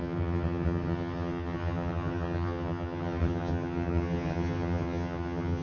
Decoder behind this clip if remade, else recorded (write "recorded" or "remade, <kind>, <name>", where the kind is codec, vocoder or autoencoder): remade, vocoder, HiFi-GAN